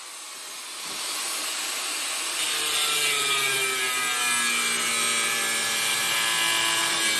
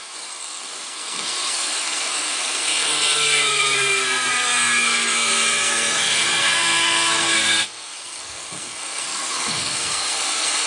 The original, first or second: first